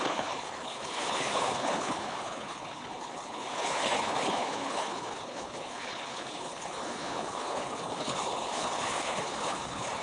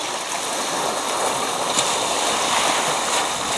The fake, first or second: first